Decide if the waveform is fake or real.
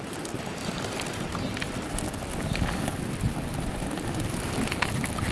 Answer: real